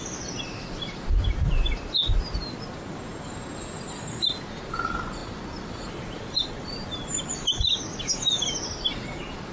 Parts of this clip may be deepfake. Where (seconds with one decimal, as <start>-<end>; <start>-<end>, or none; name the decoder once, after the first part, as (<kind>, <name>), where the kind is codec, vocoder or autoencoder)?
none

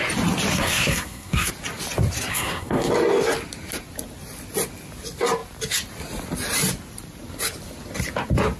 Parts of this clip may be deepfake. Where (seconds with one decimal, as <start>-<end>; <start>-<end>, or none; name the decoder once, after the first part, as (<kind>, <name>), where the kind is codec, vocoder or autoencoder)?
0.5-1.5 (codec, SNAC); 2.3-2.9

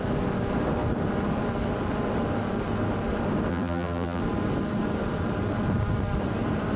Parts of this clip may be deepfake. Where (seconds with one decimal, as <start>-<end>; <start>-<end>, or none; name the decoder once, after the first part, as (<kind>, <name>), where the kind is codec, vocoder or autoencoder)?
3.5-4.2 (vocoder, BigVGAN v2)

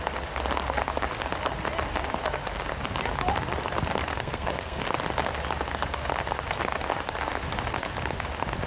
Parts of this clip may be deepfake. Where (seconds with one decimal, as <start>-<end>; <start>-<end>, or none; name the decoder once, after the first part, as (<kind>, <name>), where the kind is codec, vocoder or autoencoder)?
4.1-4.8 (codec, SNAC)